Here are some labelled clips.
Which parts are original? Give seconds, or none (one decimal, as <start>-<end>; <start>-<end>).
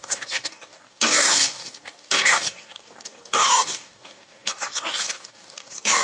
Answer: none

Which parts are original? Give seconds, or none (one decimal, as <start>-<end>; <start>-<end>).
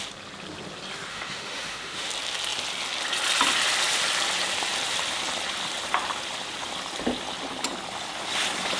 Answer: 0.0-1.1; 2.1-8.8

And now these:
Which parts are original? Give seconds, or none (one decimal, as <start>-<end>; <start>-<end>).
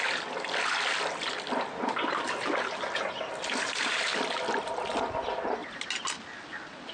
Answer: 0.0-6.9